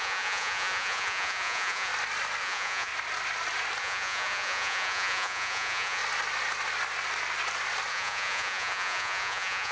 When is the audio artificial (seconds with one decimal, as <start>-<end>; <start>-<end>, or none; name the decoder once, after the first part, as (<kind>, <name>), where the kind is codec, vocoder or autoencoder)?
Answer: 0.0-1.9 (vocoder, Vocos); 2.4-2.9; 3.8-6.0; 7.9-9.7